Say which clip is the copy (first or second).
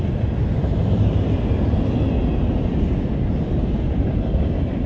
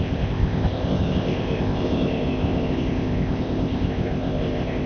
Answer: second